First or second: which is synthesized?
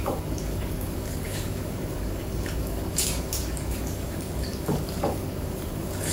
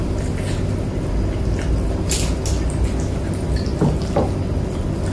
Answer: first